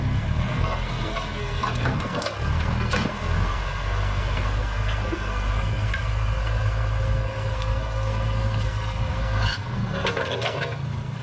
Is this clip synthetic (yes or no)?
yes